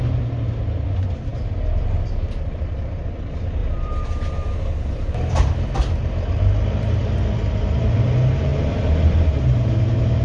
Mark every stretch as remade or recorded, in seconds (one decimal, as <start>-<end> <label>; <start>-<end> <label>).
0.0-1.3 recorded; 1.3-3.0 remade; 3.0-3.6 recorded; 3.6-8.0 remade; 8.0-8.5 recorded; 8.5-9.4 remade; 9.4-10.2 recorded